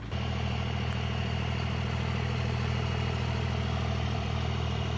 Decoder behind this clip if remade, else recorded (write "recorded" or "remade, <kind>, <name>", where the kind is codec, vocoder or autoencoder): remade, vocoder, BigVGAN v2